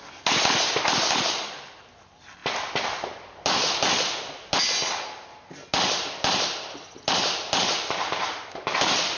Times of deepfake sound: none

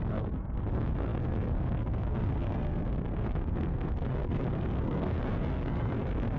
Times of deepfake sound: 0.0-6.4 (codec, SNAC)

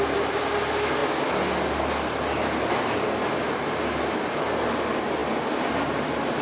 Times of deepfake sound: none

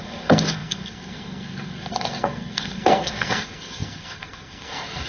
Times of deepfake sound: 0.0-5.1 (codec, SNAC)